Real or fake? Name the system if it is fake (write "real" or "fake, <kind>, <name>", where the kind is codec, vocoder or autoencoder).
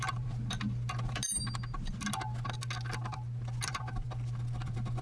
real